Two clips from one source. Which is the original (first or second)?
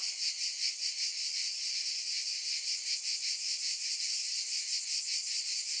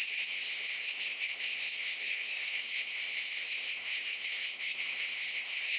first